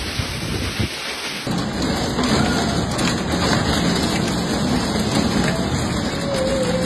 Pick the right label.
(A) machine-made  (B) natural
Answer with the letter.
B